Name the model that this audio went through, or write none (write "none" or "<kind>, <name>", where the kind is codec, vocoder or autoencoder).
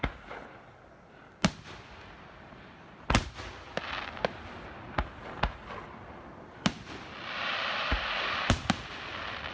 none